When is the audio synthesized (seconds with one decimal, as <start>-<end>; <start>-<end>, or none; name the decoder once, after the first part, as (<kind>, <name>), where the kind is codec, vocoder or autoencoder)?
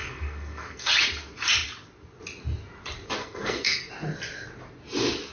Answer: 0.0-0.9 (codec, SNAC); 3.2-3.9